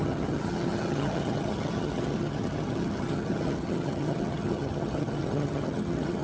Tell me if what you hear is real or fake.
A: fake